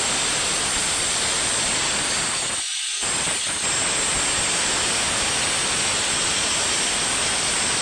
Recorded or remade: recorded